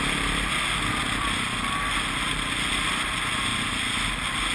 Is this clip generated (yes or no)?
no